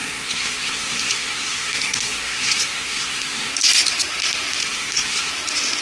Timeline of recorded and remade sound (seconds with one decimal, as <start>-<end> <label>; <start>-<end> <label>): 0.0-3.5 remade; 3.5-4.6 recorded; 4.6-5.3 remade; 5.3-5.8 recorded